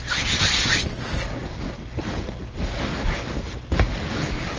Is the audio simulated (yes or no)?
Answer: no